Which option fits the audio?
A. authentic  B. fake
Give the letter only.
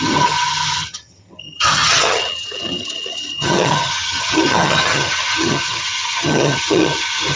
B